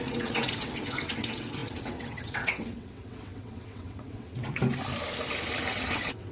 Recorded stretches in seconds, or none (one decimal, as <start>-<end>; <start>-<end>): 4.6-5.7